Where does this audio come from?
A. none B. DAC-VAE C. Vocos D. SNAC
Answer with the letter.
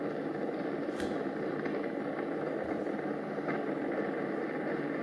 A